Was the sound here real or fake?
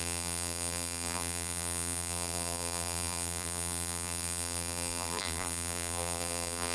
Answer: fake